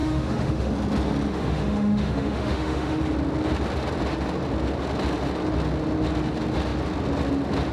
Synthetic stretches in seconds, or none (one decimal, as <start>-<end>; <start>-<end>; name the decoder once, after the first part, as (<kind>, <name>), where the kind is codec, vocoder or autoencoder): 0.0-0.7 (autoencoder, DAC-VAE); 1.3-3.0